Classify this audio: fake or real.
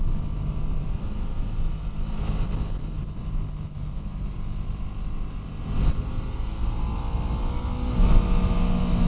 real